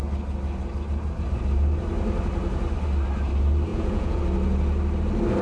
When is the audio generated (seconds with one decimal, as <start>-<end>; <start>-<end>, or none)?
3.7-4.2